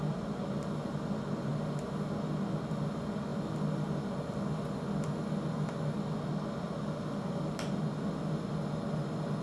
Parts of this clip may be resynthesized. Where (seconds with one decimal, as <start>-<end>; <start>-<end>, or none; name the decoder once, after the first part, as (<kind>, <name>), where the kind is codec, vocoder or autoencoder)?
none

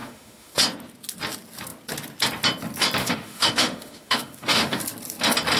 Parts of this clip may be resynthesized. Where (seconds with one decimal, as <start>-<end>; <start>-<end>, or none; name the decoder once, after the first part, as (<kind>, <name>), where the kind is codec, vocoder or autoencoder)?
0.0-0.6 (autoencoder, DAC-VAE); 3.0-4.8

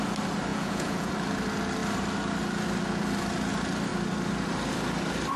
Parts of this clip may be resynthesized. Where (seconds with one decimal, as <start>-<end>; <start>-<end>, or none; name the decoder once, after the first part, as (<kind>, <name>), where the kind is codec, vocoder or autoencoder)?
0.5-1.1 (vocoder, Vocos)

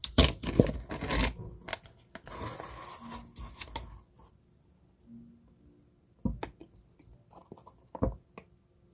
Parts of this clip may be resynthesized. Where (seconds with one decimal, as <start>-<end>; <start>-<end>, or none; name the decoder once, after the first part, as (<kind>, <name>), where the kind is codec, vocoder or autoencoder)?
none

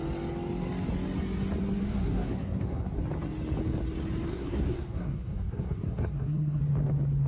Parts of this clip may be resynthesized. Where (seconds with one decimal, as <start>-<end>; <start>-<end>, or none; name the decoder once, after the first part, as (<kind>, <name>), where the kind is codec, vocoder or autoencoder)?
1.8-3.0 (codec, SNAC); 4.3-6.6